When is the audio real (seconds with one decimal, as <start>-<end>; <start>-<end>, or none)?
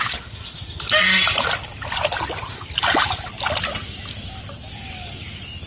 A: 0.0-5.7